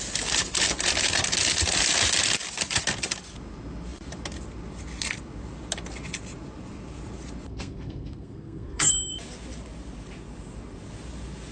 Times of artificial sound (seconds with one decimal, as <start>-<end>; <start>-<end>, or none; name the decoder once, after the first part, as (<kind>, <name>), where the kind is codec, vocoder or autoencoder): 7.5-8.9 (codec, SNAC)